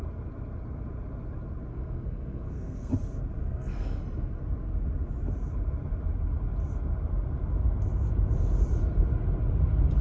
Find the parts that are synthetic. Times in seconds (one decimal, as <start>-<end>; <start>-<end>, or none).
1.7-2.9; 3.4-4.0